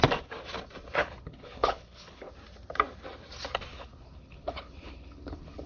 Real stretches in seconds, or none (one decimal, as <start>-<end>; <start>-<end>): 0.0-1.0; 2.3-3.7